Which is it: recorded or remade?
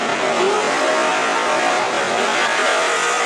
recorded